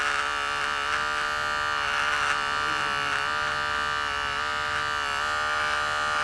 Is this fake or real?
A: real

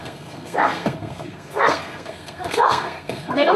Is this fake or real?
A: fake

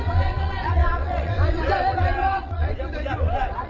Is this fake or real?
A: fake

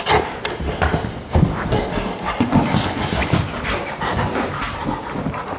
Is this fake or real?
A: real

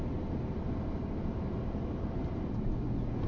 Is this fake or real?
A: real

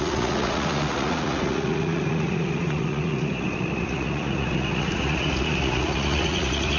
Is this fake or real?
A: fake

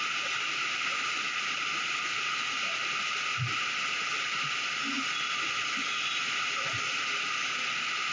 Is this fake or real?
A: real